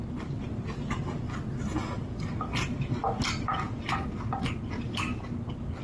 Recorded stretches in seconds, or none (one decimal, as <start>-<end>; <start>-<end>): 0.0-5.8